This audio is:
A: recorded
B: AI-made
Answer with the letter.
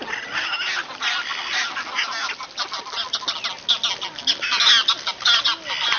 A